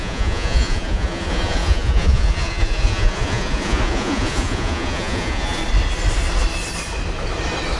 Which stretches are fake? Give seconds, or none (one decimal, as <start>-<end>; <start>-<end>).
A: 0.0-5.6